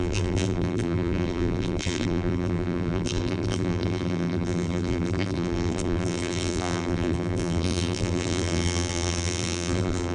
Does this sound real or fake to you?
fake